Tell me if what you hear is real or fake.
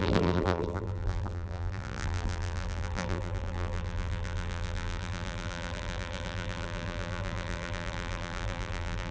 fake